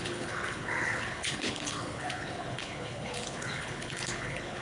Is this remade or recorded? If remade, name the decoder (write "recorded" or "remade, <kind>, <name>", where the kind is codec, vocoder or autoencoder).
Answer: remade, codec, HILCodec